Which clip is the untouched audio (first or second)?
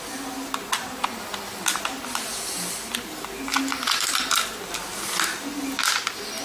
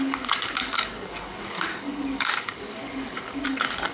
first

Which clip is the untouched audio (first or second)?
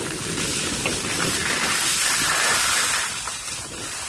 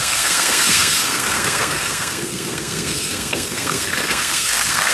first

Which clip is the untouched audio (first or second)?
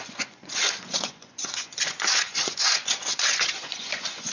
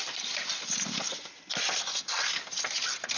second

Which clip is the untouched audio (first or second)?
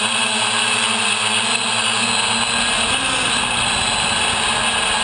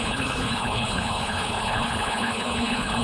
first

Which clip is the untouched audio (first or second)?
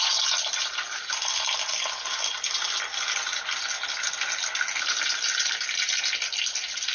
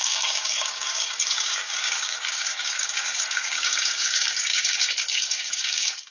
first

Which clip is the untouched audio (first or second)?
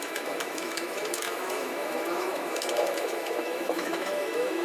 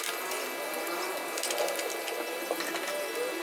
second